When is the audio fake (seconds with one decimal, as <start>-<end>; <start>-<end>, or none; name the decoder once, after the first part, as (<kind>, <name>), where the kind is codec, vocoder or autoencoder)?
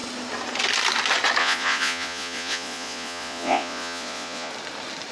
1.4-4.5 (vocoder, Vocos)